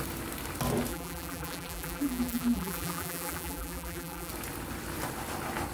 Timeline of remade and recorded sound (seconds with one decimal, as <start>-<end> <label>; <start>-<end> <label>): 0.0-0.9 recorded; 0.9-4.3 remade; 4.3-5.7 recorded